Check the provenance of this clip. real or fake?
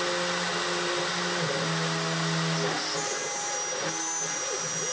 real